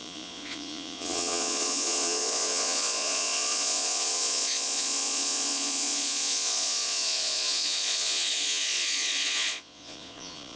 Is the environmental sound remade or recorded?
remade